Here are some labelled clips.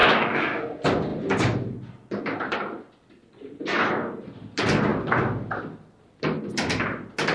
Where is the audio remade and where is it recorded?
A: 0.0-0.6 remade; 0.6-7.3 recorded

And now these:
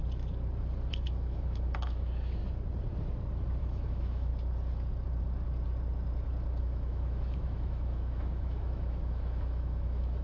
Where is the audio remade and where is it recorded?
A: 0.0-0.9 recorded; 0.9-2.4 remade; 2.4-3.6 recorded; 3.6-4.3 remade; 4.3-6.6 recorded; 6.6-10.2 remade

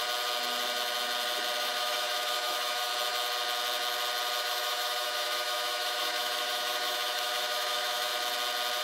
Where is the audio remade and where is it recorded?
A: 0.0-1.6 recorded; 1.6-2.9 remade; 2.9-4.4 recorded; 4.4-8.1 remade; 8.1-8.8 recorded

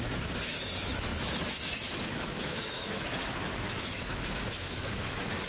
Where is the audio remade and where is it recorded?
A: 0.0-5.5 remade

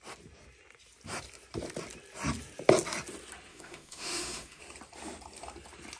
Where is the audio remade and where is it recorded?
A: 0.0-3.5 recorded; 3.5-4.6 remade; 4.6-6.0 recorded

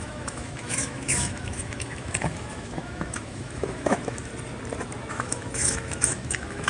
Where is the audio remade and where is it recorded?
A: 0.0-4.3 remade; 4.3-5.1 recorded; 5.1-6.7 remade